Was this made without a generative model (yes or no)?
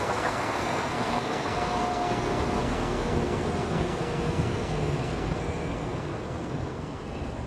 no